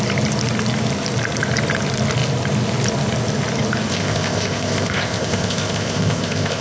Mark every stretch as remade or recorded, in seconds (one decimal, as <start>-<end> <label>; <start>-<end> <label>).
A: 0.0-3.9 recorded; 3.9-6.6 remade